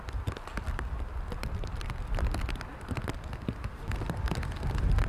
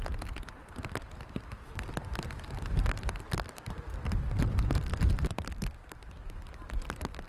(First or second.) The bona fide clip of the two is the first